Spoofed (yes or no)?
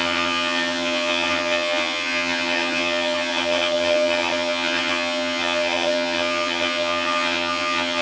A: yes